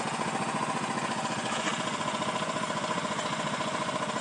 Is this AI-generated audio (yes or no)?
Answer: yes